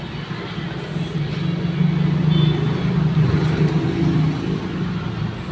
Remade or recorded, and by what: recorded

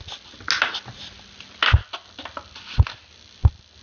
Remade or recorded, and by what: recorded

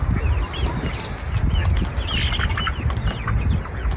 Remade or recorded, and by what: recorded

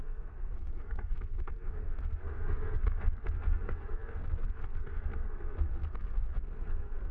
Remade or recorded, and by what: remade, codec, SNAC